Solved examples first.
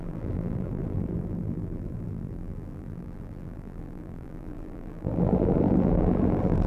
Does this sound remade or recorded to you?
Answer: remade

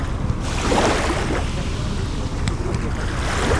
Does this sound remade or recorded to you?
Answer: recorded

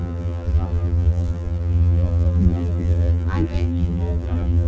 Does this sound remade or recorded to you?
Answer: remade